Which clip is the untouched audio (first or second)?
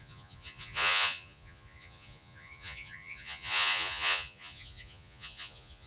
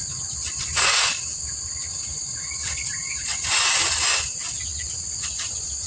second